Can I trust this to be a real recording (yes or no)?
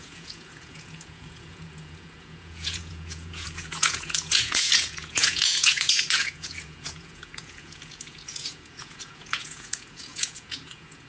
no